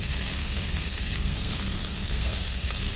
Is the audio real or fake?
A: fake